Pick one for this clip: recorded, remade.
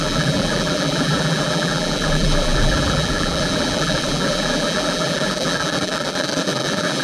remade